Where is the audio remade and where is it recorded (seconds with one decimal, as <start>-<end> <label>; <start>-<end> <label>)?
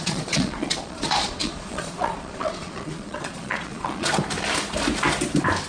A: 0.0-4.1 remade; 4.1-5.7 recorded